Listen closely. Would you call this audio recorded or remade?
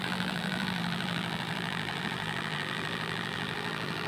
remade